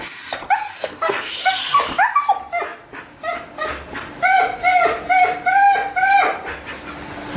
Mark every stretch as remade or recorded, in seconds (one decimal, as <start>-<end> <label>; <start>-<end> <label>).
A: 0.0-0.6 recorded; 0.6-1.8 remade; 1.8-7.4 recorded